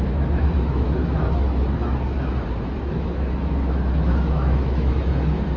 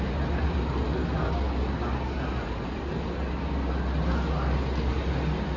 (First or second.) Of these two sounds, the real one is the second